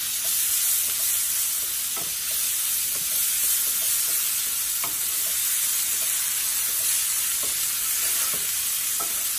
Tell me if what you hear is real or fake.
real